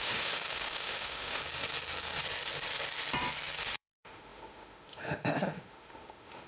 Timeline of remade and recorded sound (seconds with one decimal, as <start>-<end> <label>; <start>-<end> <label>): 0.0-1.4 remade; 1.4-3.6 recorded; 3.6-6.5 remade